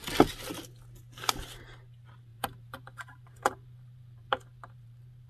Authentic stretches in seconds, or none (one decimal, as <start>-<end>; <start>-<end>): 0.0-2.3